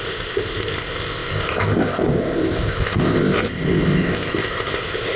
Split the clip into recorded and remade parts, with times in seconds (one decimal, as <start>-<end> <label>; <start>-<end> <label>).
0.0-5.2 remade